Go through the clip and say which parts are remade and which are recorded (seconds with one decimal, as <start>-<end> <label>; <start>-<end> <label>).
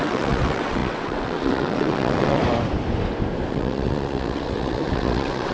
0.0-2.4 remade; 2.4-3.5 recorded; 3.5-5.5 remade